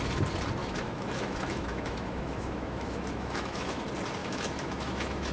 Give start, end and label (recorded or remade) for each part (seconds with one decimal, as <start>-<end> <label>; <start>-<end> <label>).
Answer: 0.0-0.6 recorded; 0.6-3.8 remade; 3.8-4.2 recorded; 4.2-5.3 remade